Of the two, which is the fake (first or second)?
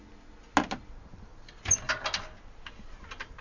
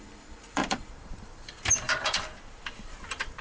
second